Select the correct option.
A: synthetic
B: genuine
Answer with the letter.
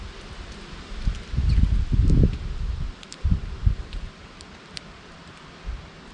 B